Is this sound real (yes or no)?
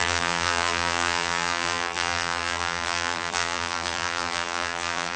no